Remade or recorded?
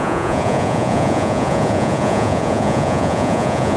remade